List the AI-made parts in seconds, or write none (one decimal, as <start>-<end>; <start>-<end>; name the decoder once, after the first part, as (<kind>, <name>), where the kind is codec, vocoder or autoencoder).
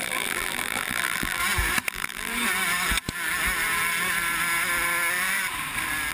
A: 0.0-1.4 (vocoder, BigVGAN v2); 1.9-2.3